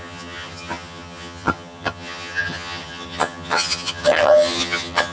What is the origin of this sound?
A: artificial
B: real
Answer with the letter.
A